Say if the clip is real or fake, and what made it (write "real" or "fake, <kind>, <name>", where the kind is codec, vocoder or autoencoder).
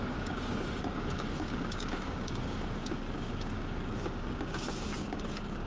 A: fake, codec, DAC